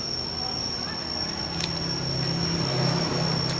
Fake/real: real